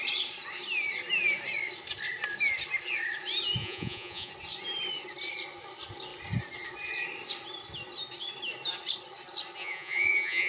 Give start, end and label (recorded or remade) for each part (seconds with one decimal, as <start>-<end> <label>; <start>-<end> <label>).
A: 0.0-3.6 recorded; 3.6-4.3 remade; 4.3-9.6 recorded; 9.6-10.5 remade